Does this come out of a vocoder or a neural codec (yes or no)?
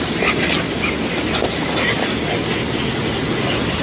no